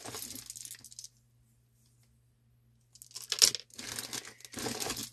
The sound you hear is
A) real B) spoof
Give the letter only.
A